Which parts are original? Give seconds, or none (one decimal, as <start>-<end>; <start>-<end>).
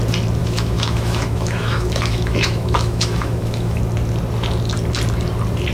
0.0-0.4; 3.8-5.7